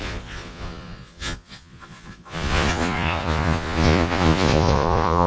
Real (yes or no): no